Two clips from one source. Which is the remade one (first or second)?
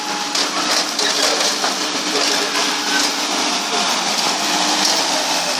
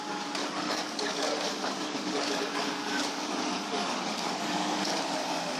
second